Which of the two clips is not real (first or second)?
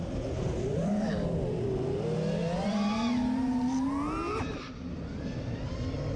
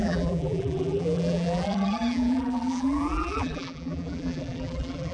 second